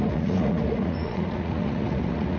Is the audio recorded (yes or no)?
no